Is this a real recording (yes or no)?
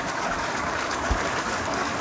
no